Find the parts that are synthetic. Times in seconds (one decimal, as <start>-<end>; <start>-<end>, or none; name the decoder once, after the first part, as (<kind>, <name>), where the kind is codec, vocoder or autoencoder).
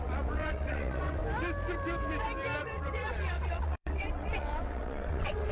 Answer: 0.0-1.2 (vocoder, WaveNeXt); 2.6-5.5